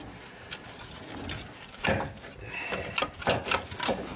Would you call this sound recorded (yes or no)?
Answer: yes